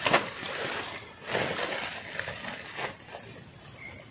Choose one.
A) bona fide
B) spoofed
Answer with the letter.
A